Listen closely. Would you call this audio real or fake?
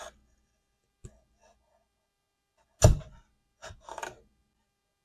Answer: real